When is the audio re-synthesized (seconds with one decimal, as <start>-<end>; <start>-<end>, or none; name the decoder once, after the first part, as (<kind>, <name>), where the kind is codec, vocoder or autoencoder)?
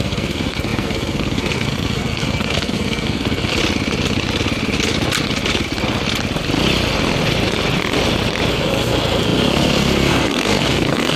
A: 0.0-3.6 (codec, SNAC); 8.5-11.2